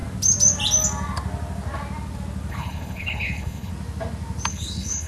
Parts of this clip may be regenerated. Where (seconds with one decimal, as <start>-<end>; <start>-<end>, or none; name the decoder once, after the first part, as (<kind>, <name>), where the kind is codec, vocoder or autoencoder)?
2.5-3.7 (codec, HILCodec); 4.5-5.1

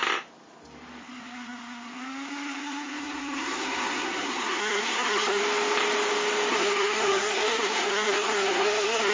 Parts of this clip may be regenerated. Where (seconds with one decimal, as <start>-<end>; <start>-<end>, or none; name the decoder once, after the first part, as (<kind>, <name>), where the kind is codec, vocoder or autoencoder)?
1.0-5.4 (codec, SNAC); 6.5-9.1